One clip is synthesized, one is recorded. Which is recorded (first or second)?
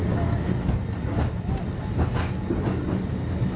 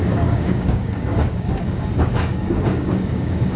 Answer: first